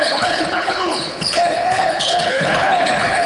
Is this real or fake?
fake